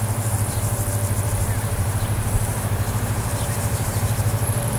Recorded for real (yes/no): no